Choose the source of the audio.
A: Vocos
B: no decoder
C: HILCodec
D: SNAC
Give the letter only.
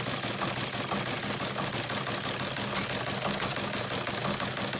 B